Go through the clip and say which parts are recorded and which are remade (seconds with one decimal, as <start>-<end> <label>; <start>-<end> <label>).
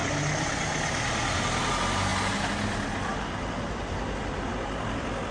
0.0-5.3 recorded